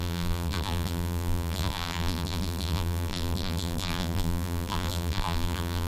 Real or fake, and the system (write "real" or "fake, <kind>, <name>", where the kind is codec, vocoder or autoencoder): fake, vocoder, BigVGAN v2